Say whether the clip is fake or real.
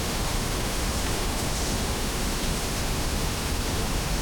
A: fake